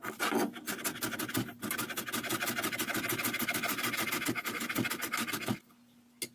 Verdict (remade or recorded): recorded